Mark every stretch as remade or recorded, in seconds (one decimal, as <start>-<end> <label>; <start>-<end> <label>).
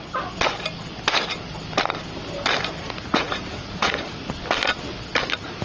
0.0-2.8 recorded; 2.8-4.2 remade; 4.2-5.6 recorded